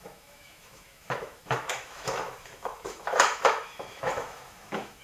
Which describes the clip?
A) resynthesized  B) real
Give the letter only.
A